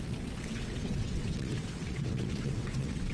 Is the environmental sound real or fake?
fake